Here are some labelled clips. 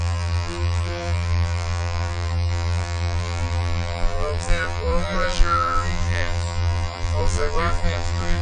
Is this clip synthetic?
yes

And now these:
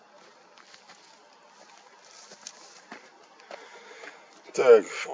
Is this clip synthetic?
no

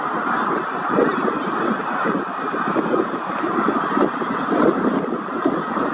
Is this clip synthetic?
no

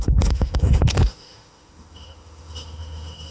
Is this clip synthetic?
yes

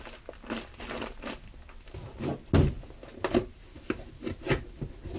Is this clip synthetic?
no